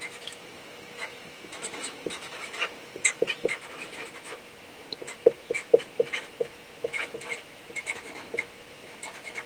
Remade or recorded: remade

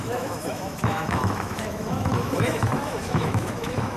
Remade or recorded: remade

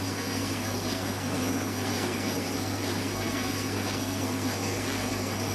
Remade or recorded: remade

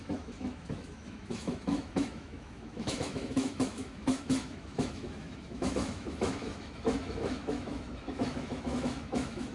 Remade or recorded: remade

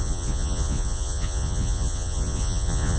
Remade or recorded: remade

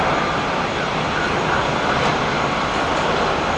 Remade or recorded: recorded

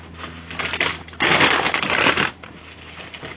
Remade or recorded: recorded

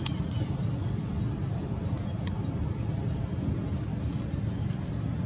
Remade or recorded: recorded